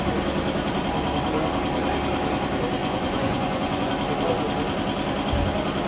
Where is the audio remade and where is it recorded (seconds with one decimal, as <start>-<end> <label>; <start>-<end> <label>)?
0.0-2.8 recorded; 2.8-3.9 remade; 3.9-5.9 recorded